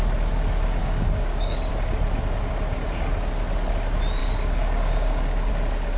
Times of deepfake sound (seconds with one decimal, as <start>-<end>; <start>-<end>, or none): 0.8-1.7; 4.2-5.5